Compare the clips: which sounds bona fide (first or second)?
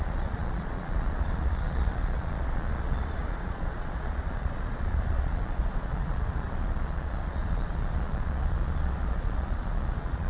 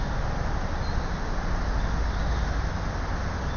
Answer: second